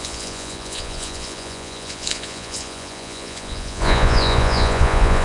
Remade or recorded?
remade